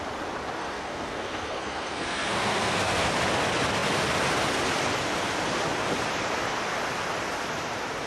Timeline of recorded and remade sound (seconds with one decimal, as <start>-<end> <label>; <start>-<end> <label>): 0.0-0.6 recorded; 0.6-3.1 remade; 3.1-8.1 recorded